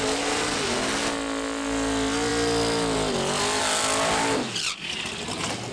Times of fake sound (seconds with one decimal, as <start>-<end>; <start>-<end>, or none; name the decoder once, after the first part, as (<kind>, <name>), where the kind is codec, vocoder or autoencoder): none